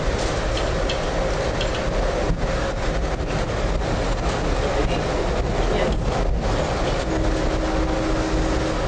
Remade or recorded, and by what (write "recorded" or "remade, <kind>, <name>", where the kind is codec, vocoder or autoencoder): recorded